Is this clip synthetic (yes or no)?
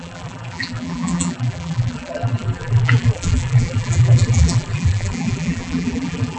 yes